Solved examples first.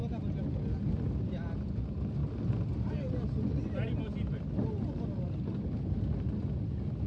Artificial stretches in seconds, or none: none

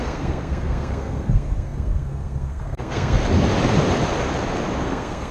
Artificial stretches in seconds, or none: 0.0-3.2 (codec, SNAC); 4.8-5.3

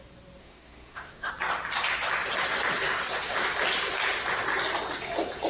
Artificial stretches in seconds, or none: 0.4-1.3 (codec, SNAC)

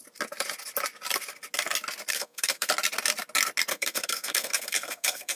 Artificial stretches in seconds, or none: 2.1-2.7 (codec, SNAC); 3.7-5.4

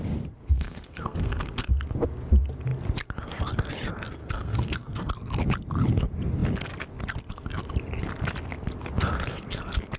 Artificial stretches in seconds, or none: 0.4-1.7 (codec, SNAC); 4.2-5.1

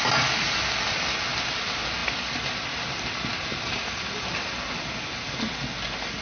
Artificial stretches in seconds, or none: none

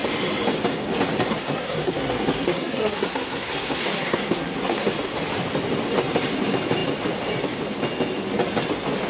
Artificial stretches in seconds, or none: 1.3-4.9 (codec, SNAC)